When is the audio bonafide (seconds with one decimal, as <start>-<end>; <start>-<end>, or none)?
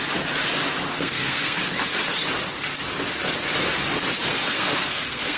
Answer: 0.0-0.9; 1.6-4.3